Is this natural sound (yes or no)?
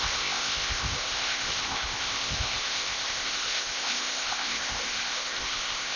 no